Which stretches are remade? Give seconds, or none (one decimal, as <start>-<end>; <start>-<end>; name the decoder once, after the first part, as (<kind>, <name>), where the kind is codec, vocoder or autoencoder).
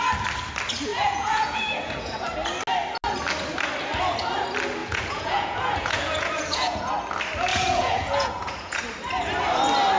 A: 0.9-2.3 (vocoder, Vocos); 4.8-6.9; 7.5-8.8